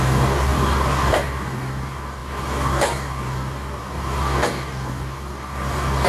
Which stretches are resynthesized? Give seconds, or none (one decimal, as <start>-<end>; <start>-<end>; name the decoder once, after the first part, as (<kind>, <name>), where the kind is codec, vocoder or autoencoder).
0.0-6.1 (codec, DAC)